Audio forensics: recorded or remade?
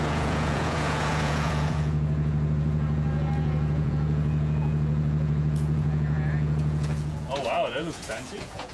remade